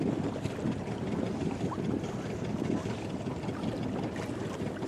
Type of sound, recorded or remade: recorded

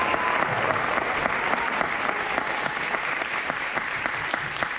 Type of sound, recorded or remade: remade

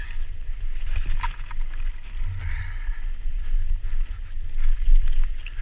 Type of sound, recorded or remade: recorded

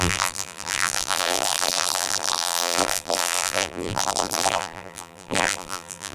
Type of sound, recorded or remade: remade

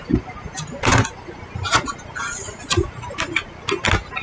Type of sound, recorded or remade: recorded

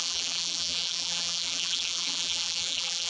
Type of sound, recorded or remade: remade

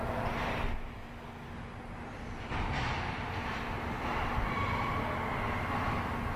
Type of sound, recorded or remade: recorded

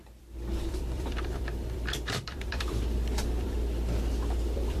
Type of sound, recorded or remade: remade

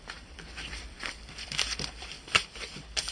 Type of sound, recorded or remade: remade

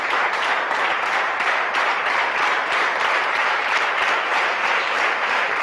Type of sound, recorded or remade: remade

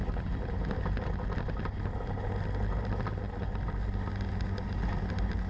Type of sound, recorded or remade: recorded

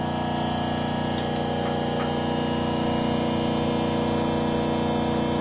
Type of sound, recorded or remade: recorded